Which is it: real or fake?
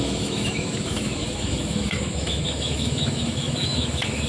fake